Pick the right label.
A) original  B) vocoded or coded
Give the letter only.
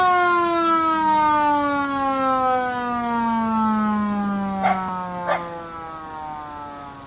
A